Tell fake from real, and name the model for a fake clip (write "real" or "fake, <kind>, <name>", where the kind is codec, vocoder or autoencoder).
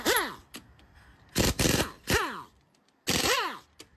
real